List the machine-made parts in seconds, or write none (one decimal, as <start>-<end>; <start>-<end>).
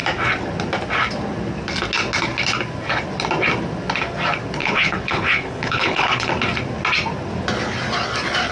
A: 4.6-6.3